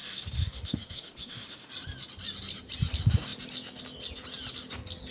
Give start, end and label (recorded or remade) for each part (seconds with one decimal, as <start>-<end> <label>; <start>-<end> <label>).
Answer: 0.0-1.7 remade; 1.7-5.1 recorded